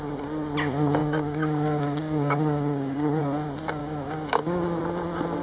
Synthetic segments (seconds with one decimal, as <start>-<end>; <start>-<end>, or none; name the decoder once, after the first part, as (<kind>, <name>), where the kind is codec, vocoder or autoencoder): 1.0-3.2 (codec, DAC); 3.8-4.8